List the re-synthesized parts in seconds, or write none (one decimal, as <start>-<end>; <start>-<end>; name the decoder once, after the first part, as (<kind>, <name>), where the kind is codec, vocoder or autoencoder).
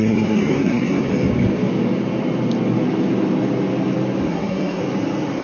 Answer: 0.0-1.1 (codec, SNAC); 4.3-4.8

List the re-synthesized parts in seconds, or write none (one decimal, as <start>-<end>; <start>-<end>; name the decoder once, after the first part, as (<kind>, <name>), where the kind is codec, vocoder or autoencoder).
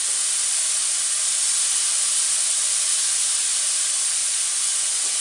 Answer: 4.2-5.2 (vocoder, Vocos)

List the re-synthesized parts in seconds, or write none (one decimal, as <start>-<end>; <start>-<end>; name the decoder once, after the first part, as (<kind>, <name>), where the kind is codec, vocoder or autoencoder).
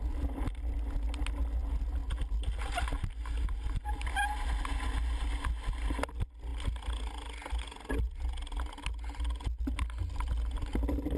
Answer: none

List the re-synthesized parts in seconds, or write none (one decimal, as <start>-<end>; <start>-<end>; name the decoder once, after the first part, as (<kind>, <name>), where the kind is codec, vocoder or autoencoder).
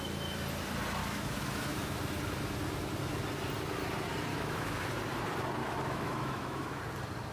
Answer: 1.0-2.0 (autoencoder, DAC-VAE); 4.3-4.9; 5.6-6.8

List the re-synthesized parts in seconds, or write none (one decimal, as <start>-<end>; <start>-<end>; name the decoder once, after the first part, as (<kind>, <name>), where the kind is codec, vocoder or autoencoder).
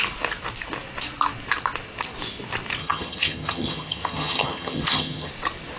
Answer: 2.8-5.3 (vocoder, HiFi-GAN)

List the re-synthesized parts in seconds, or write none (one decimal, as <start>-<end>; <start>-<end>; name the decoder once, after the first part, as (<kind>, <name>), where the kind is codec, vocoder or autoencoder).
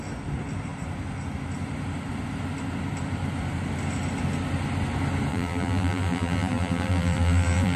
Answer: 5.3-7.8 (vocoder, BigVGAN v2)